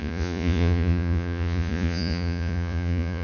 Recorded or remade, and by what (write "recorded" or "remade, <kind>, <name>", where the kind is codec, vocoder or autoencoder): remade, vocoder, Vocos